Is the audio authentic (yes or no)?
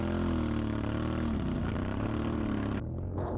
yes